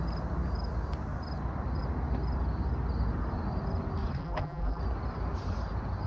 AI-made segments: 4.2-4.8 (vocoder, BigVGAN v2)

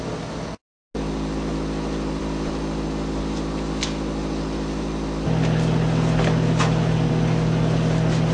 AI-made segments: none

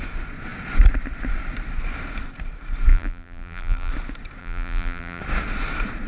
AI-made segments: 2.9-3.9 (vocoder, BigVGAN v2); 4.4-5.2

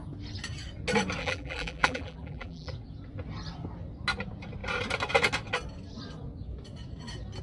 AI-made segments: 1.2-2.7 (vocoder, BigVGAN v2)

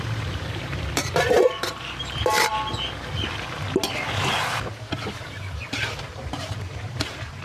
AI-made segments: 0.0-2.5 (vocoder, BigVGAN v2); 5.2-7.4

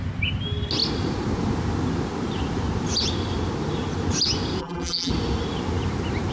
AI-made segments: 4.6-5.1 (vocoder, BigVGAN v2)

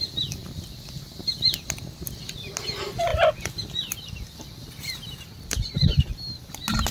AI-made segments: 3.1-6.5 (vocoder, BigVGAN v2)